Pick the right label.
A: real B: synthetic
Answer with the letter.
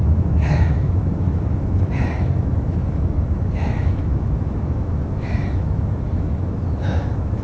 B